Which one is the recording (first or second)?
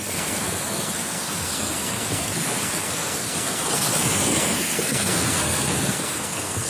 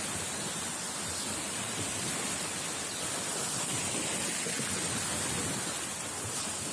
second